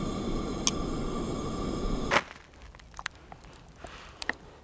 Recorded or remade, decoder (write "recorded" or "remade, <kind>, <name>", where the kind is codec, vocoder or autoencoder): recorded